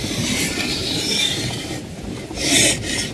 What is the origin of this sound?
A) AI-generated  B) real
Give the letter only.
A